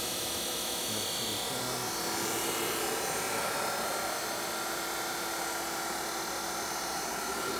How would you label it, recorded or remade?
recorded